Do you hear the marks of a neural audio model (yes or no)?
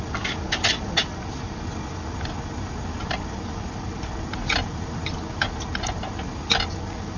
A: no